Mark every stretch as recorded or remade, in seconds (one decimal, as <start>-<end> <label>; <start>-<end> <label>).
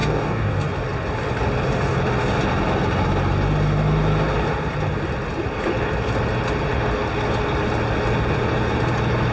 0.0-0.5 remade; 0.5-9.3 recorded